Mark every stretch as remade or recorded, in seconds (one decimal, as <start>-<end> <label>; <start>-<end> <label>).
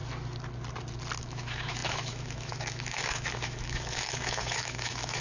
0.0-1.2 recorded; 1.2-5.2 remade